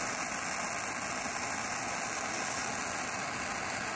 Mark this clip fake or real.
real